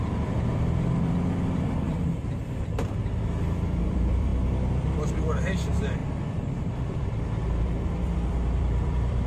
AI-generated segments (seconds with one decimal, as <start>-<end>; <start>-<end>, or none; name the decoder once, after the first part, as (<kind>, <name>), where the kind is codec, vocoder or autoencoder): 0.0-9.3 (vocoder, BigVGAN v2)